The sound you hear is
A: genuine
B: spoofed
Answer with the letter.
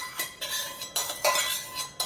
A